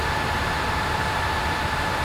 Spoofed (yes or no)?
no